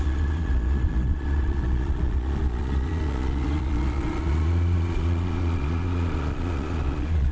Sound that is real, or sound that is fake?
fake